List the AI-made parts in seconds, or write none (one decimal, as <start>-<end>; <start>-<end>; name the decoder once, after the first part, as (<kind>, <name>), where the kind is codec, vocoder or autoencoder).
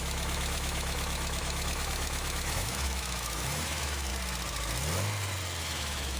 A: 0.0-4.1 (autoencoder, DAC-VAE); 5.6-6.2